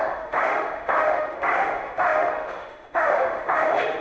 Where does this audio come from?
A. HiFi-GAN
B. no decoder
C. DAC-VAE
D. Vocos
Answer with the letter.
C